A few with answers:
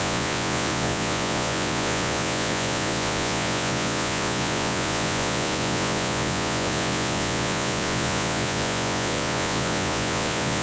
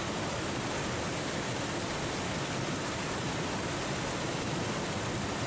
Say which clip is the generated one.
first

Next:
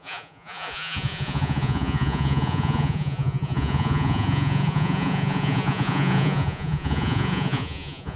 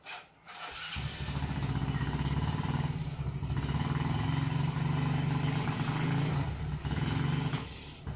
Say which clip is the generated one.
first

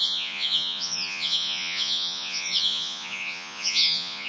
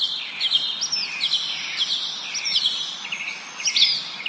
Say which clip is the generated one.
first